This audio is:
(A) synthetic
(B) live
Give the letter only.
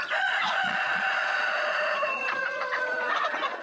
A